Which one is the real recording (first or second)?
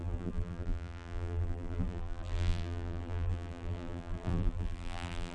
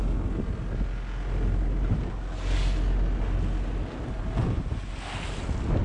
second